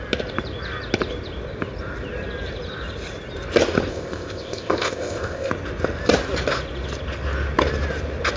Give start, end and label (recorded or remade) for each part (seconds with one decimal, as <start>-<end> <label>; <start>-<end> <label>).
0.0-3.9 recorded; 3.9-5.5 remade; 5.5-8.4 recorded